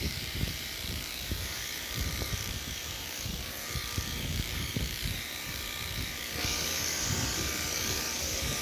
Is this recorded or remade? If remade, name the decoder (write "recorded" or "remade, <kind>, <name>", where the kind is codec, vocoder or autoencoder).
remade, codec, DAC